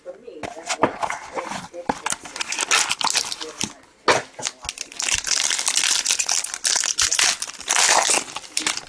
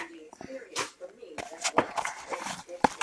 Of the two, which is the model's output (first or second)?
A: second